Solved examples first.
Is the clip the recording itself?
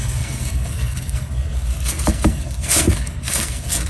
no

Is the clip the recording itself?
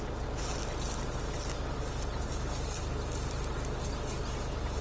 yes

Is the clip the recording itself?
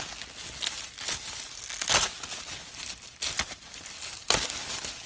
yes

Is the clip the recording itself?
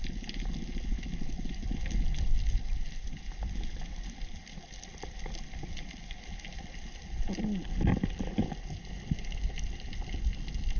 yes